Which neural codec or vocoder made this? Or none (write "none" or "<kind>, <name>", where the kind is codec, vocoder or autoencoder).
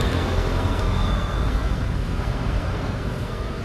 codec, SNAC